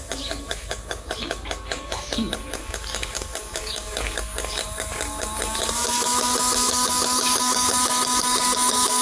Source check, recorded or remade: remade